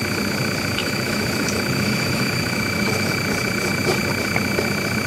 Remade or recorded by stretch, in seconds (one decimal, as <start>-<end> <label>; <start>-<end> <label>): 0.0-0.8 recorded; 0.8-3.1 remade; 3.1-5.1 recorded